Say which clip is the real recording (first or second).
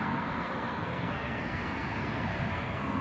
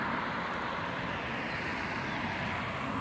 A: second